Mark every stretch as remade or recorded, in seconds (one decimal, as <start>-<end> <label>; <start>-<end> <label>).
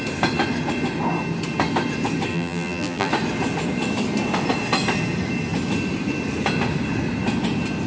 0.0-2.3 recorded; 2.3-3.1 remade; 3.1-7.9 recorded